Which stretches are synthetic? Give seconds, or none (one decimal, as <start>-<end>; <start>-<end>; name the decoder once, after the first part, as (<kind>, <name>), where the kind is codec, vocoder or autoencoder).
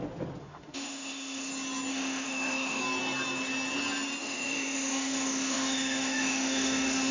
0.4-1.5 (autoencoder, DAC-VAE); 1.9-2.8; 4.2-7.1